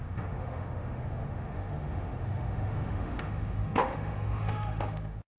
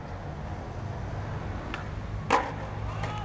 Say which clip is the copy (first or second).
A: first